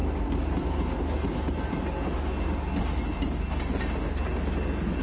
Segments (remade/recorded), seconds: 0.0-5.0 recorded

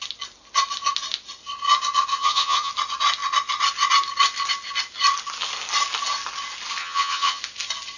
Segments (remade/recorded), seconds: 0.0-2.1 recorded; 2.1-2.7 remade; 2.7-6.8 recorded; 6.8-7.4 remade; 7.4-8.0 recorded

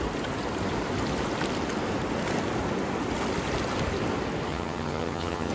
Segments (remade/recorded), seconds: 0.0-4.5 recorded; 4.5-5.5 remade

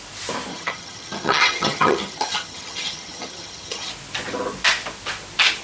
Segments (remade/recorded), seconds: 0.0-0.5 recorded; 0.5-3.9 remade; 3.9-5.6 recorded

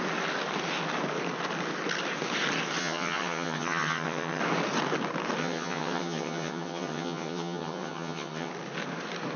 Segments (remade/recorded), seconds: 0.0-2.8 recorded; 2.8-4.4 remade; 4.4-5.4 recorded; 5.4-8.5 remade; 8.5-9.4 recorded

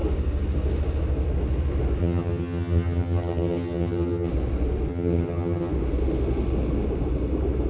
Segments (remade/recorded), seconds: 0.0-2.0 recorded; 2.0-4.3 remade; 4.3-4.9 recorded; 4.9-5.7 remade; 5.7-7.7 recorded